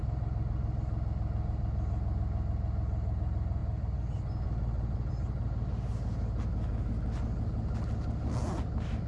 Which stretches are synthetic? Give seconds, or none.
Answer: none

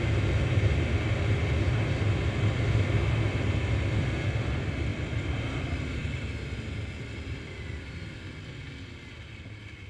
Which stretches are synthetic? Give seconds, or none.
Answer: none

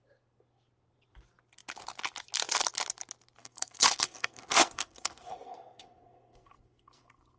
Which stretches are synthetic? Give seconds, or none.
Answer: 3.4-7.4

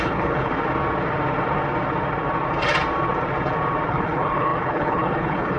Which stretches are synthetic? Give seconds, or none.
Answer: 0.0-0.5; 3.9-5.6

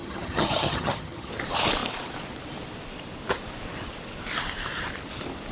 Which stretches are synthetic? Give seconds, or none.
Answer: 0.0-1.3